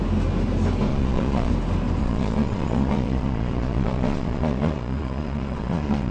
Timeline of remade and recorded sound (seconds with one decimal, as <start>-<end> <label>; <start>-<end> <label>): 0.0-0.9 recorded; 0.9-1.5 remade; 1.5-2.0 recorded; 2.0-6.1 remade